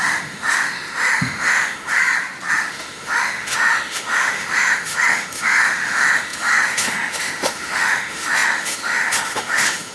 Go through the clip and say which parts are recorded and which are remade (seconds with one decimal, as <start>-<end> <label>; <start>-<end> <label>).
0.0-2.0 remade; 2.0-2.5 recorded; 2.5-9.9 remade